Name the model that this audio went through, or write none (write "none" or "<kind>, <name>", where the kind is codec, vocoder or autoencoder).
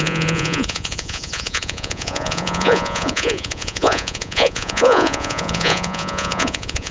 vocoder, Vocos